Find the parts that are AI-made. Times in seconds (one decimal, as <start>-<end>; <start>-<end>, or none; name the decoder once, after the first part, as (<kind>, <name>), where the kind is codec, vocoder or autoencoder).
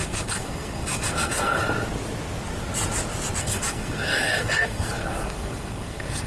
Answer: 0.0-1.6 (codec, SNAC); 3.4-6.3